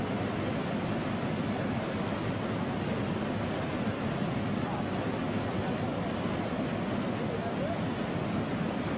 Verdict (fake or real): real